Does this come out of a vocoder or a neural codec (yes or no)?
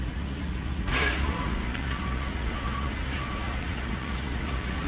yes